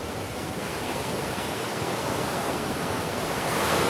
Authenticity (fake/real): fake